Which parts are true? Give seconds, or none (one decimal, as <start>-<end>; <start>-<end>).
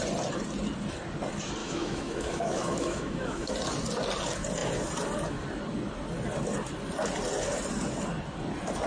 0.0-1.6; 3.5-8.9